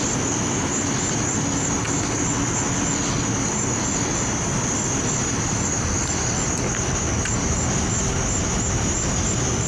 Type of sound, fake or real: real